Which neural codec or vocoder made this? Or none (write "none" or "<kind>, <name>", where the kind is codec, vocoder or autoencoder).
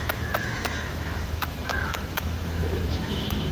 autoencoder, DAC-VAE